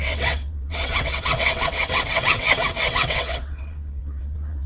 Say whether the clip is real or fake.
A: fake